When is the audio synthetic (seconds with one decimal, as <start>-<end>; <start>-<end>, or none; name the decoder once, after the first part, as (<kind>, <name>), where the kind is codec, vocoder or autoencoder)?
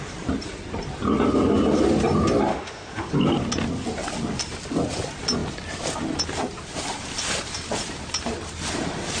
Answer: 2.5-3.1 (autoencoder, DAC-VAE)